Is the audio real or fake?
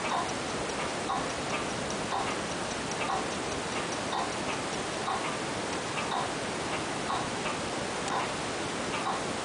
real